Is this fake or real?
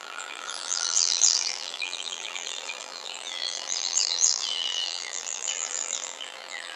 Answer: fake